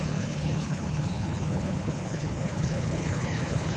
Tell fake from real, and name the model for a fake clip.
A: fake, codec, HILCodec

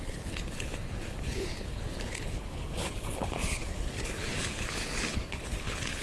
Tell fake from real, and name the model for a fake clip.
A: fake, codec, HILCodec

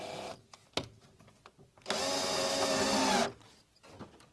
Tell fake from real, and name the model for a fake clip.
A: real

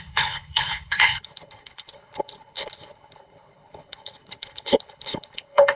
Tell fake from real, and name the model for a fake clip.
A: fake, codec, HILCodec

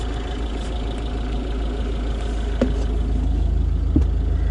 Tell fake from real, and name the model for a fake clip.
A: real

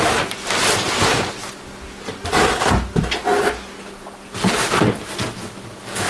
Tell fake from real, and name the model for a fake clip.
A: real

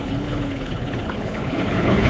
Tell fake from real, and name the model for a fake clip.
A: fake, codec, HILCodec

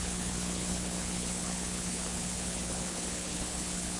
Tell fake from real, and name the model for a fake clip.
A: fake, codec, HILCodec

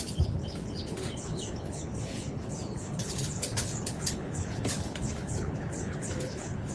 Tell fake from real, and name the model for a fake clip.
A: fake, codec, HILCodec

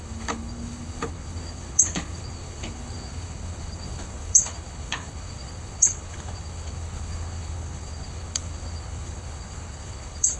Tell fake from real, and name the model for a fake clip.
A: fake, codec, HILCodec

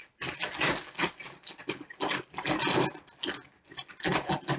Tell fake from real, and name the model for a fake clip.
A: real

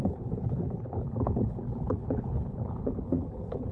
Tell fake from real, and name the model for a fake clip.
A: fake, codec, HILCodec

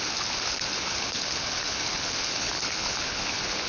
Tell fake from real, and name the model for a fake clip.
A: fake, codec, HILCodec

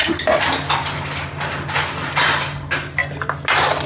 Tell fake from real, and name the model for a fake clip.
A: real